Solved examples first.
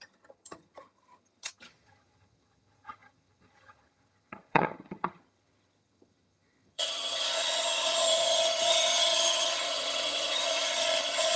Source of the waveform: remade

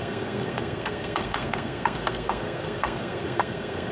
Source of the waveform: remade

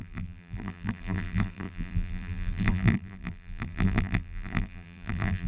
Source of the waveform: remade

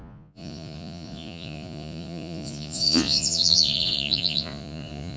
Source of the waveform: remade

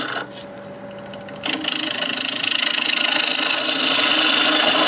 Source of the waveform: recorded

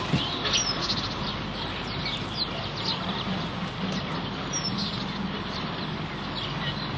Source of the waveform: recorded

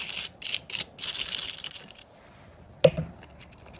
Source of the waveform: recorded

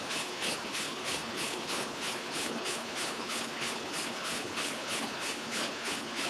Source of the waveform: remade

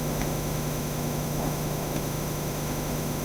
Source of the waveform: remade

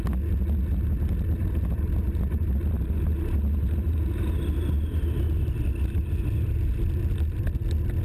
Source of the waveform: recorded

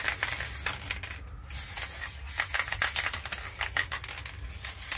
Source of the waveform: recorded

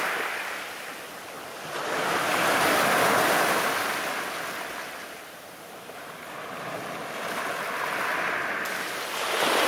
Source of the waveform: recorded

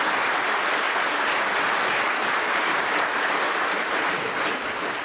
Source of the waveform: recorded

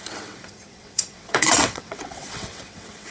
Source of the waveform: remade